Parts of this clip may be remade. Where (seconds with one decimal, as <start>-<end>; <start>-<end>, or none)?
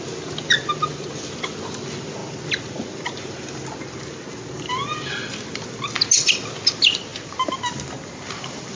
none